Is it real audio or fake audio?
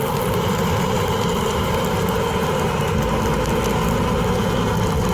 real